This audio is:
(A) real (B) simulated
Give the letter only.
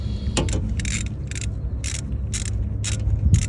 A